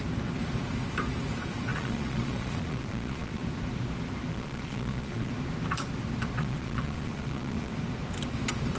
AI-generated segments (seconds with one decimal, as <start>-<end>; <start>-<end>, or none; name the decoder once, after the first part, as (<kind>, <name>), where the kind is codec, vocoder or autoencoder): 1.7-3.4 (vocoder, Vocos); 4.3-5.3; 6.4-7.7